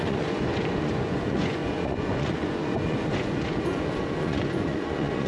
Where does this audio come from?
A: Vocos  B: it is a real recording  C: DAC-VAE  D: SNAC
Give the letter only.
A